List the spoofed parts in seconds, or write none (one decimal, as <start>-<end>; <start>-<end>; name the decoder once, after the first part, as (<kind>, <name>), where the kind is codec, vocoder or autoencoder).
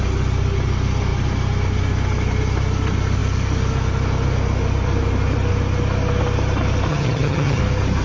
6.9-7.6 (vocoder, HiFi-GAN)